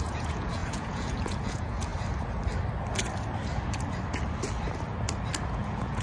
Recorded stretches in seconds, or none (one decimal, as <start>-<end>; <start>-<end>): 1.9-5.5